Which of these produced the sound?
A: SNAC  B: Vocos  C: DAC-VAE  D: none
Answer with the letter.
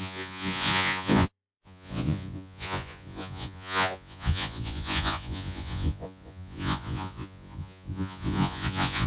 B